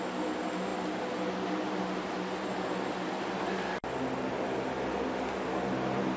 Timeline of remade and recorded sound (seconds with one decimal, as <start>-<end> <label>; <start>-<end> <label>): 0.0-6.2 recorded